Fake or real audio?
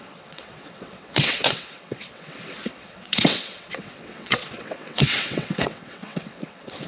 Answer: fake